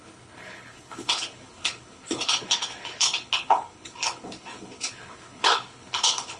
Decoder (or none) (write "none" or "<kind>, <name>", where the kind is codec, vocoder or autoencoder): codec, HILCodec